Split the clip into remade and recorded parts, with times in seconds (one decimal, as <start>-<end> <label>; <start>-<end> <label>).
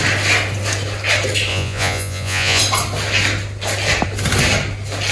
0.0-1.5 recorded; 1.5-2.6 remade; 2.6-5.1 recorded